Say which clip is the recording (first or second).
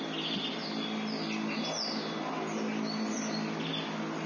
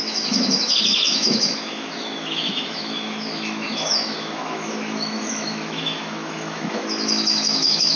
first